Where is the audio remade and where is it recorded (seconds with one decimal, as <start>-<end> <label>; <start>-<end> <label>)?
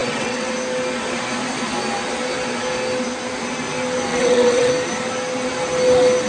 0.0-0.5 remade; 0.5-4.1 recorded; 4.1-4.7 remade; 4.7-6.3 recorded